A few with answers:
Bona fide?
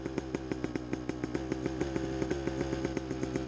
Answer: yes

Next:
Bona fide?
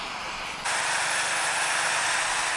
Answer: yes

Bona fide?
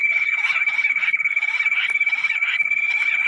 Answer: no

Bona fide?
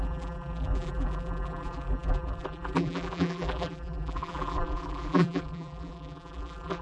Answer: no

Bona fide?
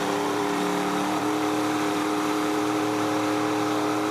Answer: no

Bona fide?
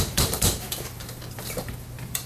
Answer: no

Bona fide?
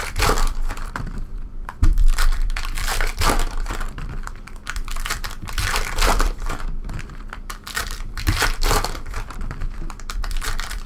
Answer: no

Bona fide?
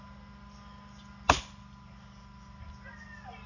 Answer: yes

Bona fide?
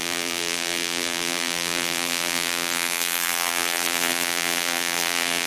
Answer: no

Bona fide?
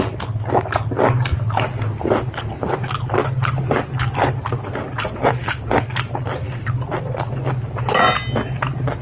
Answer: yes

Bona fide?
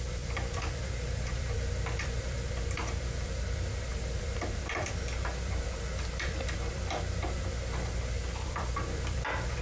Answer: no